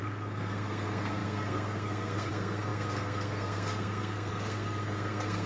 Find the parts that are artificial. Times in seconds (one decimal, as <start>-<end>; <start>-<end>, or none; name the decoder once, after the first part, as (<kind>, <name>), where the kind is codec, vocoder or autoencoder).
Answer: 0.0-5.5 (codec, SNAC)